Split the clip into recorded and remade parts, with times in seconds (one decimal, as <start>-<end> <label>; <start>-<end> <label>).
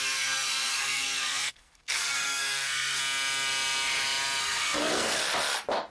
0.0-3.0 remade; 3.0-4.4 recorded; 4.4-5.2 remade; 5.2-5.9 recorded